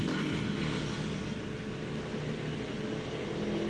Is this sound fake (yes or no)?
no